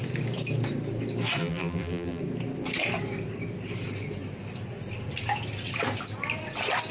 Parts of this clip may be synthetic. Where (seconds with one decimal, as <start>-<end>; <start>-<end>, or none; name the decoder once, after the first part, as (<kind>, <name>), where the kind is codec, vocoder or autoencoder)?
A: 1.4-2.2 (vocoder, BigVGAN v2)